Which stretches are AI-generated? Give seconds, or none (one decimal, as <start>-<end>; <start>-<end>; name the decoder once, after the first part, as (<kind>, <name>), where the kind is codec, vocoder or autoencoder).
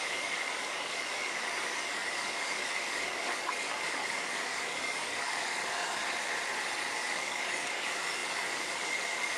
0.0-6.0 (codec, DAC); 6.8-9.4